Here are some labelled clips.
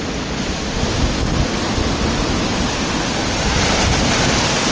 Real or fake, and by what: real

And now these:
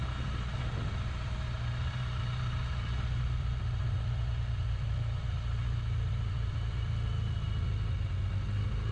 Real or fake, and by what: real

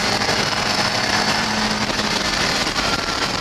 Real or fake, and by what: fake, vocoder, BigVGAN v2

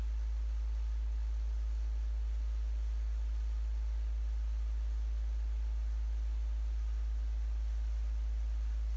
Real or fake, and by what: real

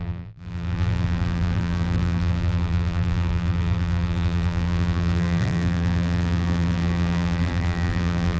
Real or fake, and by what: fake, vocoder, BigVGAN v2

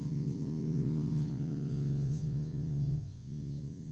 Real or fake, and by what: fake, vocoder, Vocos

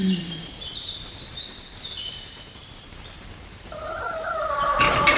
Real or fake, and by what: fake, vocoder, BigVGAN v2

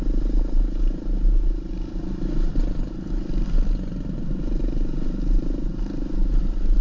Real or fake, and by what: real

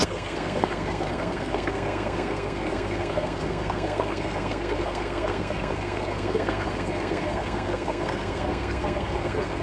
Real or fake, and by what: fake, codec, SNAC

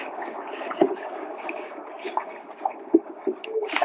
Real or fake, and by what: fake, codec, DAC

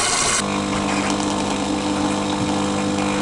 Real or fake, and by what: real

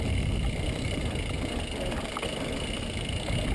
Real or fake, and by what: real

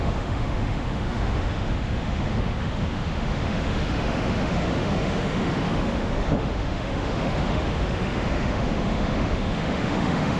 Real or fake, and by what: fake, autoencoder, DAC-VAE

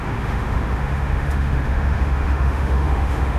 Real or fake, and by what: fake, autoencoder, DAC-VAE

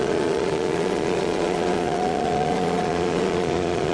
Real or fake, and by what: fake, vocoder, Vocos